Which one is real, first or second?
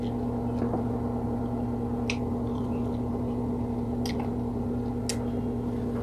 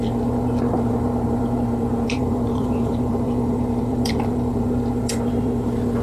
first